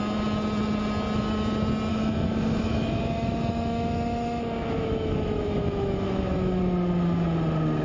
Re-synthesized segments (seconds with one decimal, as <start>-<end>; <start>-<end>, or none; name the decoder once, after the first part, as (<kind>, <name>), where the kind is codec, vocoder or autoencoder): 1.9-6.6 (autoencoder, DAC-VAE)